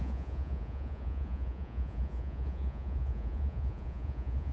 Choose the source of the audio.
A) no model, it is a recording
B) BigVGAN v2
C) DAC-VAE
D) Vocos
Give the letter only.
D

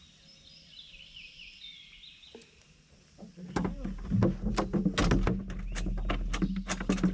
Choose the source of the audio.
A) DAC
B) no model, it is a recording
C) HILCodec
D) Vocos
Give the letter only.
B